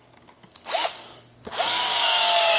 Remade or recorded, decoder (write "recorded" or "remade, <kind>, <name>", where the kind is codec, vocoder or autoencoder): remade, codec, DAC